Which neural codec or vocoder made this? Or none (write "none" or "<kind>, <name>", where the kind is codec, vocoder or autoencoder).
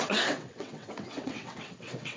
vocoder, WaveNeXt